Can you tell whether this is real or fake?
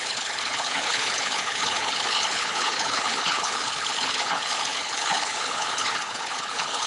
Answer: fake